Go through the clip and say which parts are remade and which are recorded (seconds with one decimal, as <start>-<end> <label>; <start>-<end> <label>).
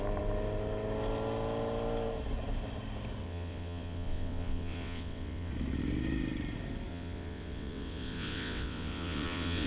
0.0-3.2 recorded; 3.2-5.5 remade; 5.5-6.9 recorded; 6.9-9.7 remade